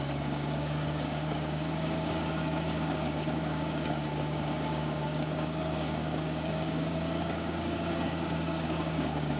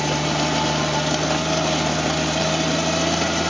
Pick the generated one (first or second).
first